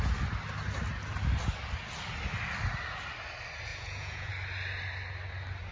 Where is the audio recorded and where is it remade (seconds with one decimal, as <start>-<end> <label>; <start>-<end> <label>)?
0.0-3.7 recorded; 3.7-4.3 remade; 4.3-5.7 recorded